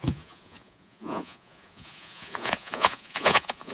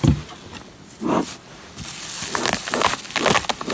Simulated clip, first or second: first